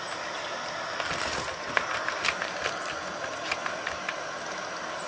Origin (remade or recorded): recorded